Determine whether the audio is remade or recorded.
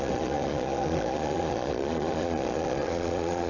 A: remade